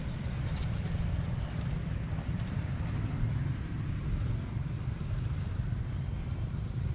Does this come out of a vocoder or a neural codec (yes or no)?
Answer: yes